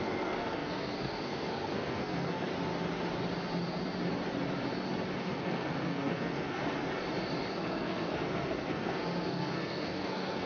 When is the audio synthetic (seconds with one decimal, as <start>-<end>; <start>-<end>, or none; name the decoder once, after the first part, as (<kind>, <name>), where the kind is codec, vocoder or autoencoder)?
0.0-2.5 (codec, SNAC); 5.2-6.6; 7.5-10.5